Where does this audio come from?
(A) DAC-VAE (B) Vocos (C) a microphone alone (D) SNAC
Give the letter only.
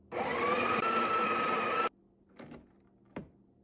C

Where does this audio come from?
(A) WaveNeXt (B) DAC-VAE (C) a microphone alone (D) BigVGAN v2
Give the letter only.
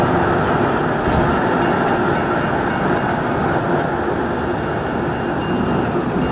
C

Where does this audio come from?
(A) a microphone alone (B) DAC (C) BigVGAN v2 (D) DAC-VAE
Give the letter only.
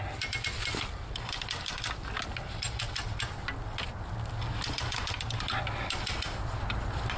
A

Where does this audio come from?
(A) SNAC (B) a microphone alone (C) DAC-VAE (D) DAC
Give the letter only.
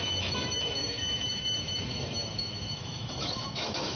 C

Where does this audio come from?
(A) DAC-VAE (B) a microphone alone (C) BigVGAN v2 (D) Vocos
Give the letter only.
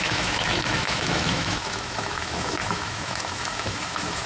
A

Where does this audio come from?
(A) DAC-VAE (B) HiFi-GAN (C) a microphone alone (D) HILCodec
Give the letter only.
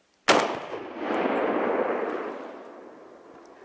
C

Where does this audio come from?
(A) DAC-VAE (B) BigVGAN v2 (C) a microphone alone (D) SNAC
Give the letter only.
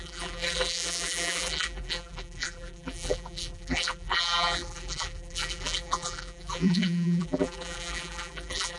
B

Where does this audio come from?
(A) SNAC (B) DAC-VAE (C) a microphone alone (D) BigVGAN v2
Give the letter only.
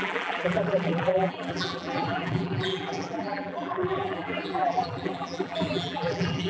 D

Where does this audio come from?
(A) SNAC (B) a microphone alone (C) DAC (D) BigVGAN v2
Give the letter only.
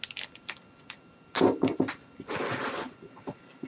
B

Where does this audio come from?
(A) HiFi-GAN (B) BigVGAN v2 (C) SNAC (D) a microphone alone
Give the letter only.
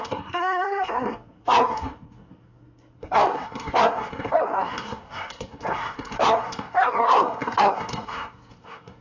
C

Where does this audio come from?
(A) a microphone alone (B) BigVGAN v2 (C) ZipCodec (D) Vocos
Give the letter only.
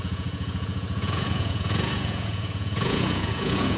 D